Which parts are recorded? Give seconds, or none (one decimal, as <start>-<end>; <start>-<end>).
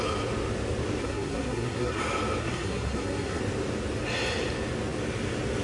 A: 0.0-1.0; 2.0-2.4; 3.4-5.6